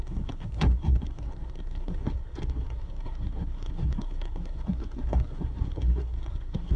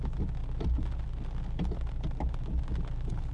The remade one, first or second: first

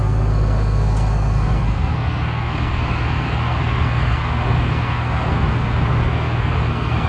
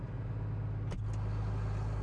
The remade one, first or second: first